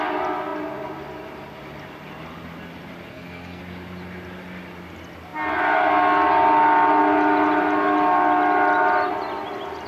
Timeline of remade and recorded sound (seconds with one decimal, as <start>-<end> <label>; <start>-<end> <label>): 0.0-3.1 recorded; 3.1-3.6 remade; 3.6-9.9 recorded